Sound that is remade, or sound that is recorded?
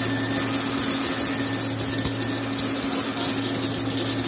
recorded